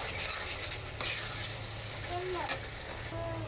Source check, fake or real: real